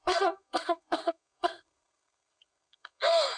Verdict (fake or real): fake